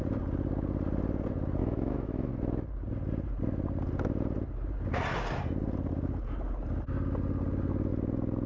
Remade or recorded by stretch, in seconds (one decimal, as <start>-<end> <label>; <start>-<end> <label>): 0.0-1.6 recorded; 1.6-2.3 remade; 2.3-8.5 recorded